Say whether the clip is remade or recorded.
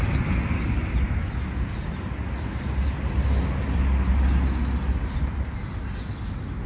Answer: recorded